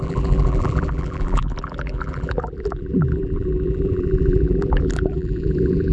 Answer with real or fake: fake